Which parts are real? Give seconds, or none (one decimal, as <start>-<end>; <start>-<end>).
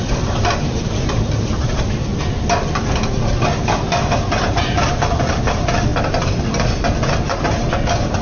2.1-4.1; 5.9-7.4